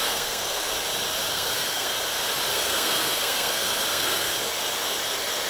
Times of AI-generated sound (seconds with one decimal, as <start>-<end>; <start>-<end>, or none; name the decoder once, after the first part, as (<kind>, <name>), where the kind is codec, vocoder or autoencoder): 0.0-0.7 (codec, SNAC); 1.3-1.9; 2.5-4.3